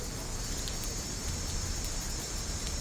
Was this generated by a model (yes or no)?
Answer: no